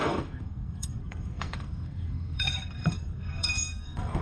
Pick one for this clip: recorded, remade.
remade